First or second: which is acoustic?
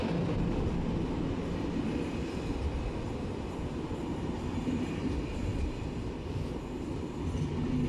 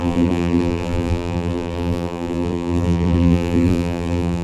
first